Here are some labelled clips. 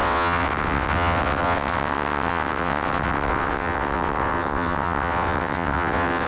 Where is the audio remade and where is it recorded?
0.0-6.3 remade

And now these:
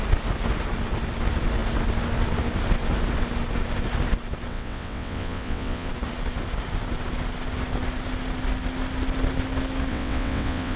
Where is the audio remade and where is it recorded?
0.0-4.5 recorded; 4.5-5.9 remade; 5.9-9.9 recorded; 9.9-10.8 remade

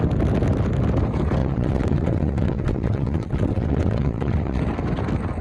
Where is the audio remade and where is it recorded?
0.0-1.4 recorded; 1.4-4.6 remade; 4.6-5.4 recorded

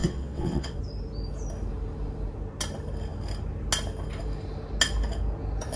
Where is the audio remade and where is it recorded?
0.0-0.8 remade; 0.8-5.8 recorded

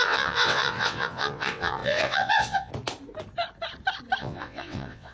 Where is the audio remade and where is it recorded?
0.0-2.7 remade; 2.7-4.2 recorded; 4.2-5.1 remade